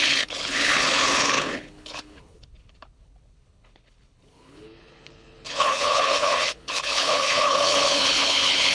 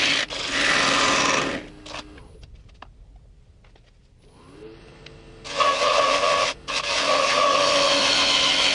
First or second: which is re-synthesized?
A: first